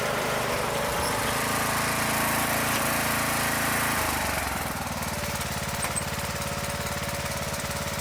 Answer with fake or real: fake